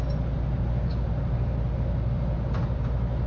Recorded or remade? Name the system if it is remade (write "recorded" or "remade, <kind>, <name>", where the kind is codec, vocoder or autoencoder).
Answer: recorded